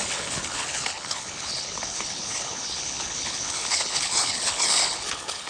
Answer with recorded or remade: remade